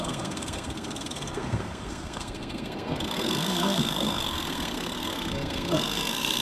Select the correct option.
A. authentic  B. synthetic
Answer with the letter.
B